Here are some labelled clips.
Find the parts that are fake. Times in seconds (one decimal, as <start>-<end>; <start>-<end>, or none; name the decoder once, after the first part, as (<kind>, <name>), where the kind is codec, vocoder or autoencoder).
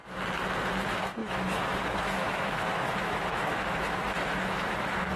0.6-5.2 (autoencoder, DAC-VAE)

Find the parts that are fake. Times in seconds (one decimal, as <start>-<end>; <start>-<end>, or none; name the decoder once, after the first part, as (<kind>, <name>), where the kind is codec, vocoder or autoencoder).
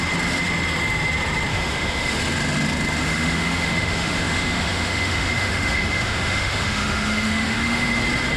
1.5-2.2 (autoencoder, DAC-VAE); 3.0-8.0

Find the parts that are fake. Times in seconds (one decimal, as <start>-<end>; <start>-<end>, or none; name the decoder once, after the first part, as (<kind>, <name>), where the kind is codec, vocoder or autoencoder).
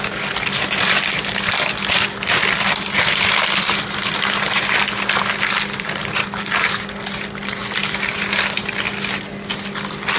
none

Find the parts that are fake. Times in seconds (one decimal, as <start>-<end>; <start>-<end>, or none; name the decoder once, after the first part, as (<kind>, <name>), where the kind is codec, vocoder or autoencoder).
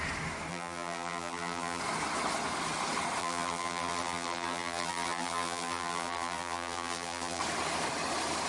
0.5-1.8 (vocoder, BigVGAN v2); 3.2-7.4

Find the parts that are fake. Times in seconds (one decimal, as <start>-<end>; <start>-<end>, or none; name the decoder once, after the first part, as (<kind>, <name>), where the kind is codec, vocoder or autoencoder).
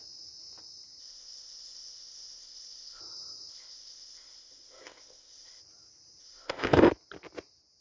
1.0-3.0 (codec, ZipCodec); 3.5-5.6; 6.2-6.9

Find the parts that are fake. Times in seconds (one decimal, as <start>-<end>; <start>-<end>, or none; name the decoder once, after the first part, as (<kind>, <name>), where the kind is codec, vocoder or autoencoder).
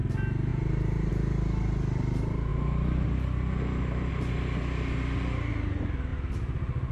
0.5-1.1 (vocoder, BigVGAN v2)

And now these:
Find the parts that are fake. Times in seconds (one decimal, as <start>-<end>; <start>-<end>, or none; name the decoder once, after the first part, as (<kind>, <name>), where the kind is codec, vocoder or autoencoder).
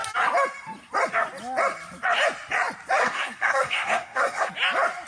3.0-4.5 (codec, SNAC)